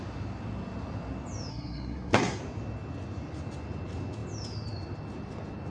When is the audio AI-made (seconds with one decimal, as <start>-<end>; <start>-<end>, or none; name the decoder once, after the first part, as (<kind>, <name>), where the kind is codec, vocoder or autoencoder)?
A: 1.5-2.4 (codec, SNAC)